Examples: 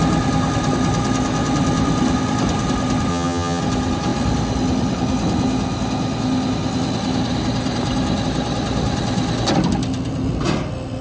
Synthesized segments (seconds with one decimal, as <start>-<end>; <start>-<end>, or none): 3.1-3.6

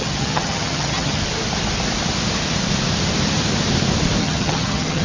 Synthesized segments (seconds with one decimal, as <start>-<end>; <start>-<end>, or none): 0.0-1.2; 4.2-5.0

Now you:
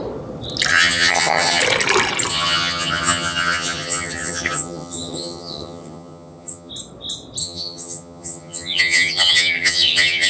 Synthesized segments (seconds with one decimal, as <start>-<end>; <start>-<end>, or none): 0.7-1.6; 2.3-6.7; 7.4-10.3

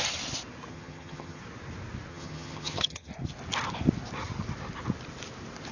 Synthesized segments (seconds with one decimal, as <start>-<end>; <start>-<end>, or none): 0.7-1.4; 2.1-3.1